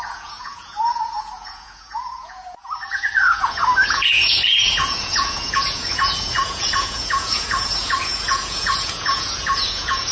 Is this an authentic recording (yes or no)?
no